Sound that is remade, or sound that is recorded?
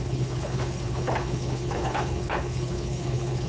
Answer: remade